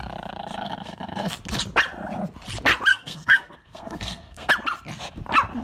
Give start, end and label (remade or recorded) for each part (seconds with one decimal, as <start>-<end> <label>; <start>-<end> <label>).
0.0-0.4 recorded; 0.4-1.3 remade; 1.3-2.9 recorded; 2.9-4.5 remade; 4.5-5.6 recorded